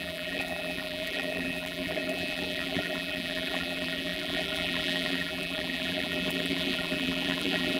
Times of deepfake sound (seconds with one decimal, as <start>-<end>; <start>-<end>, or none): 0.0-7.8